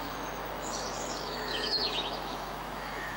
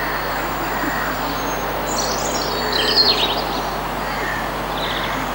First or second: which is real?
second